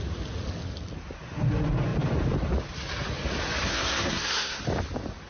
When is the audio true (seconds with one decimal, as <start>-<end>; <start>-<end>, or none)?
0.0-3.7; 4.6-5.3